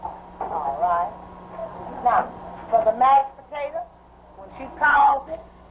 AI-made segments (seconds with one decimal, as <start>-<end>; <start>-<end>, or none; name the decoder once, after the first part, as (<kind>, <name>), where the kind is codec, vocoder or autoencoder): 4.9-5.7 (codec, HILCodec)